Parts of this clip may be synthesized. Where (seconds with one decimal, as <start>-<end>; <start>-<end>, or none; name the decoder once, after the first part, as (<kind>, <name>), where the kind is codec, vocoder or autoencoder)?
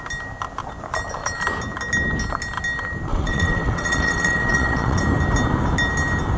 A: 3.1-5.0 (vocoder, WaveNeXt)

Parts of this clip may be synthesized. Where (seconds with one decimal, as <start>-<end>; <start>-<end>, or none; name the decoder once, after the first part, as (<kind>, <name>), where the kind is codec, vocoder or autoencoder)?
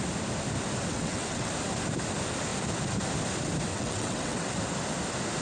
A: 0.9-1.5 (vocoder, WaveNeXt); 3.7-4.5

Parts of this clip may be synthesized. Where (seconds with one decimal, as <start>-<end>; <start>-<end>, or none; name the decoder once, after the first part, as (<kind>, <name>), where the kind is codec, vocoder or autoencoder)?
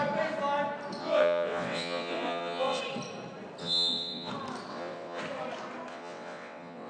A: 1.0-2.8 (vocoder, WaveNeXt); 3.6-4.3; 4.7-5.2; 5.9-6.9